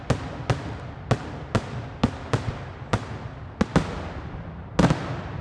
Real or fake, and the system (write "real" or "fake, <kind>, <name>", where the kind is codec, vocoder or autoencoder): real